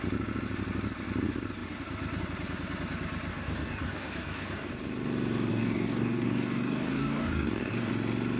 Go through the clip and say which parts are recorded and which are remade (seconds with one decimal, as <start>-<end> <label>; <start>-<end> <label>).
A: 0.0-3.3 recorded; 3.3-4.7 remade; 4.7-5.5 recorded; 5.5-7.9 remade; 7.9-8.4 recorded